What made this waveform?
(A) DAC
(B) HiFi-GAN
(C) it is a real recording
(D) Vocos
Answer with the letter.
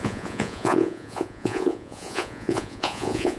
D